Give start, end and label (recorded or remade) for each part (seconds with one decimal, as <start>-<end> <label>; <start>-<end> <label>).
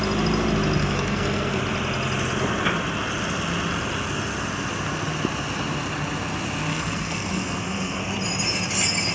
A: 0.0-0.8 recorded; 0.8-1.6 remade; 1.6-6.7 recorded; 6.7-8.0 remade; 8.0-9.1 recorded